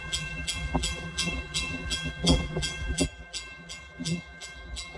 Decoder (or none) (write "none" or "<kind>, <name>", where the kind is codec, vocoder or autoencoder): vocoder, BigVGAN v2